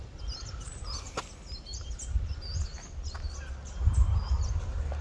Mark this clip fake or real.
real